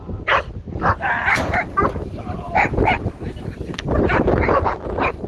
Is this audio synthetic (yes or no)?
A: no